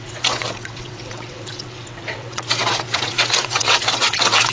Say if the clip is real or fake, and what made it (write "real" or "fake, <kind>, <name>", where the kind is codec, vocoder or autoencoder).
fake, vocoder, WaveNeXt